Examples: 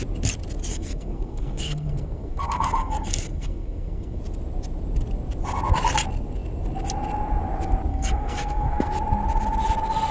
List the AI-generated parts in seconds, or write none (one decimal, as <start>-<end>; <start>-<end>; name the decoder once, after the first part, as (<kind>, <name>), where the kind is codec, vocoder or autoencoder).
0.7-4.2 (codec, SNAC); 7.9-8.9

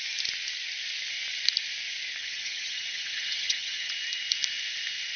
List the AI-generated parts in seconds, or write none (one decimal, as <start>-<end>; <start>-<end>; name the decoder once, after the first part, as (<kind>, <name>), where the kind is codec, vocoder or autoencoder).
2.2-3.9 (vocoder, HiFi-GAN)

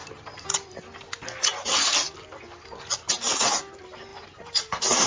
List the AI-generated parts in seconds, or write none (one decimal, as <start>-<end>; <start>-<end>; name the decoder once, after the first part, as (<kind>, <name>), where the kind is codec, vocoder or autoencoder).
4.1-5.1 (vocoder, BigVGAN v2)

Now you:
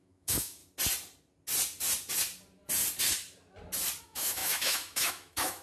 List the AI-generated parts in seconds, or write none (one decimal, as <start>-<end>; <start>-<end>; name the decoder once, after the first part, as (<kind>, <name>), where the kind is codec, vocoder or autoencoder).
0.0-0.6 (autoencoder, DAC-VAE); 4.0-5.6

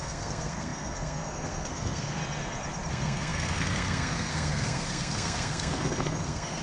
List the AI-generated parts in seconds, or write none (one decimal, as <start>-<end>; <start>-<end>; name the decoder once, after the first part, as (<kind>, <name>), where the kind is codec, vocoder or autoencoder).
0.0-2.2 (codec, SNAC); 2.9-6.6

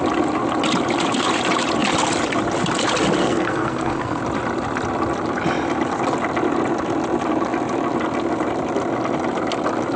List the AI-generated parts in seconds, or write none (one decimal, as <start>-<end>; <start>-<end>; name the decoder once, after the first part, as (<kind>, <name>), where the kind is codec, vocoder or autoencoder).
3.2-4.2 (codec, SNAC)

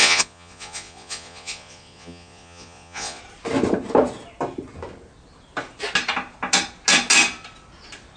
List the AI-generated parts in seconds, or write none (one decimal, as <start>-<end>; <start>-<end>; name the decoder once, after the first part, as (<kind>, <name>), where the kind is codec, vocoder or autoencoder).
0.0-3.2 (vocoder, Vocos)

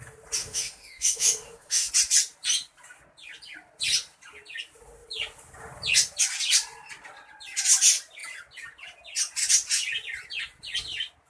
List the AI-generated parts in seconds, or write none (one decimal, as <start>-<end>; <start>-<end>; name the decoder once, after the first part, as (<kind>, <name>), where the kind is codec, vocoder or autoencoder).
0.4-1.9 (autoencoder, DAC-VAE)